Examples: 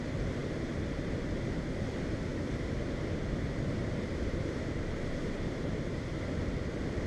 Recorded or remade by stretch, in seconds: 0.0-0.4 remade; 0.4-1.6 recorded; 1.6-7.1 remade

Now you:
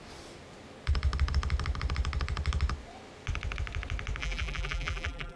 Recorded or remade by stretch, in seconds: 0.0-4.2 recorded; 4.2-5.4 remade

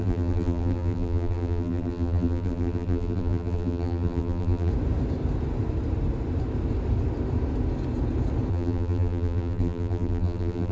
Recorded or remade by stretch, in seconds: 0.0-4.7 remade; 4.7-8.5 recorded; 8.5-10.7 remade

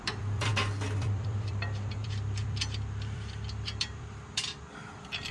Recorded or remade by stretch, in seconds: 0.0-0.5 remade; 0.5-1.0 recorded; 1.0-5.3 remade

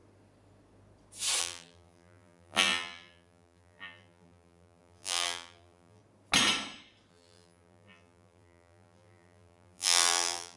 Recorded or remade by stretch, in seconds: 0.0-1.4 recorded; 1.4-6.0 remade; 6.0-7.1 recorded; 7.1-10.6 remade

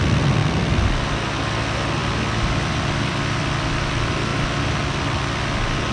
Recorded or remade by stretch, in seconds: 0.0-0.4 recorded; 0.4-1.1 remade; 1.1-2.0 recorded; 2.0-3.9 remade; 3.9-5.9 recorded

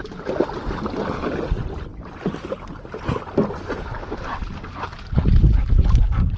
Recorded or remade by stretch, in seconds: 0.0-1.9 recorded; 1.9-2.5 remade; 2.5-6.4 recorded